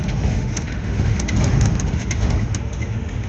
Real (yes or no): no